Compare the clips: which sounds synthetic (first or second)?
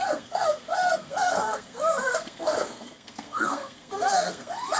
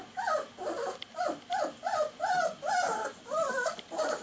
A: first